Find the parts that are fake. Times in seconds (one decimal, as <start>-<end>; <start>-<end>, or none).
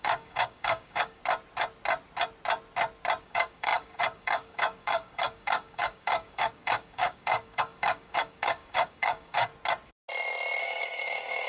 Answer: 0.0-1.2; 3.2-9.5; 10.6-11.5